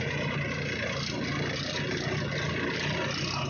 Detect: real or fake real